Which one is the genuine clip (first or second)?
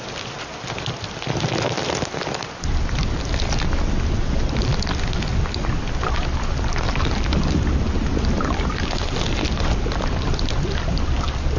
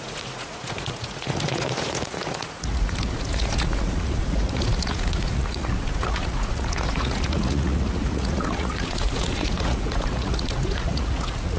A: first